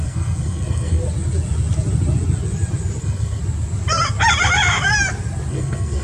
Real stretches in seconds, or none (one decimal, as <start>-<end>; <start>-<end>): 1.0-3.0; 3.4-5.5